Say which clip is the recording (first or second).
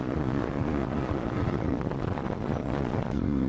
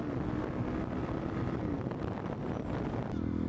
second